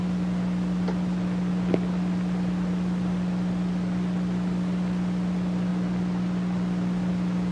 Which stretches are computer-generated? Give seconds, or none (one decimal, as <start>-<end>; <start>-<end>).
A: none